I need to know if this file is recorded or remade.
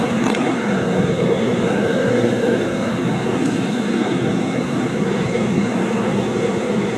remade